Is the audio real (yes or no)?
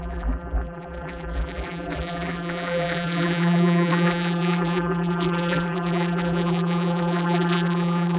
no